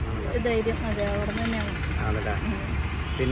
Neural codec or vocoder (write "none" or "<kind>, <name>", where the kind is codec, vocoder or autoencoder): none